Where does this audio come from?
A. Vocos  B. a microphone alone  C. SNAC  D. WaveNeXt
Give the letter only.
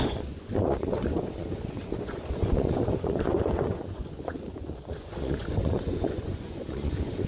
A